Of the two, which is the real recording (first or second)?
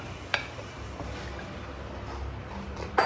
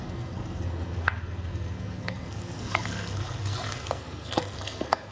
first